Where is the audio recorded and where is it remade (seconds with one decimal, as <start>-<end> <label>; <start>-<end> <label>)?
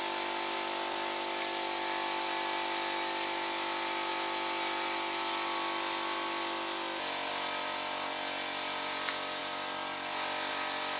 0.0-11.0 recorded